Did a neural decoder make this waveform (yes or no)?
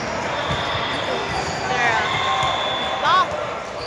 no